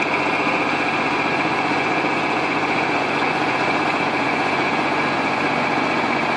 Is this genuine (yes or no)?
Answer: no